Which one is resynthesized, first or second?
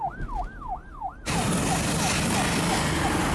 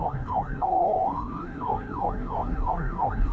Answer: second